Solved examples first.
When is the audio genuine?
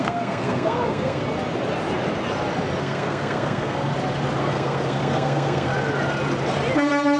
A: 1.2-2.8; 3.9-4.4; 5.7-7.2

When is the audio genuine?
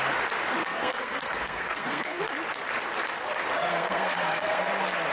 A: 0.0-0.6; 2.2-3.7; 4.6-5.1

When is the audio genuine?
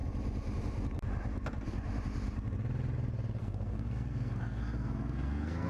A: 0.0-3.4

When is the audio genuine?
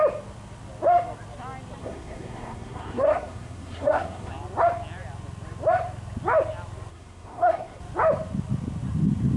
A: 0.0-1.8; 4.3-6.9; 7.8-9.4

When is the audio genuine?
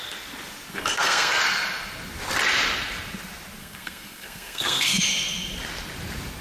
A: 0.0-0.7; 1.4-3.6; 5.0-6.4